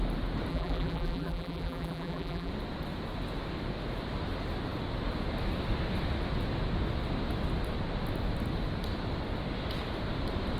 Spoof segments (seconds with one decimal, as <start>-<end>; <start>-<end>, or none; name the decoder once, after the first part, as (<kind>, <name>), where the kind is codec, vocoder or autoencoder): 0.5-2.5 (vocoder, BigVGAN v2)